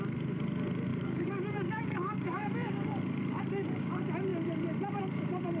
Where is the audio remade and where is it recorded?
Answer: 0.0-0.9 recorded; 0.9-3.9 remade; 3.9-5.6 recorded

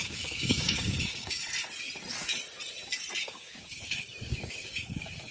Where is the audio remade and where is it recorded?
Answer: 0.0-1.4 remade; 1.4-3.2 recorded; 3.2-5.3 remade

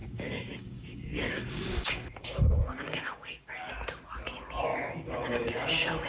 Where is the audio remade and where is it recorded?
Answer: 0.0-3.7 remade; 3.7-4.7 recorded; 4.7-6.1 remade

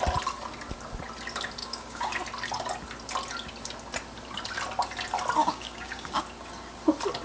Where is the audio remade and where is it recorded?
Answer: 0.0-1.6 recorded; 1.6-2.1 remade; 2.1-5.4 recorded; 5.4-6.2 remade; 6.2-7.2 recorded

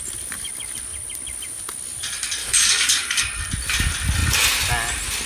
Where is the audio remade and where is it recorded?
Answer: 0.0-2.4 recorded; 2.4-3.2 remade; 3.2-5.3 recorded